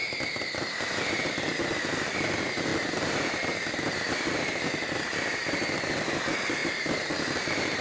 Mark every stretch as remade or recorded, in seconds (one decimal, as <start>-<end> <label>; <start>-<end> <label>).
0.0-6.6 recorded; 6.6-7.8 remade